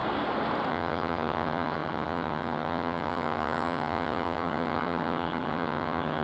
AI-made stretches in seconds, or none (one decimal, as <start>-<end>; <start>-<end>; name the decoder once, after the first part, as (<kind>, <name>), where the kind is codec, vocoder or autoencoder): 0.7-6.2 (vocoder, HiFi-GAN)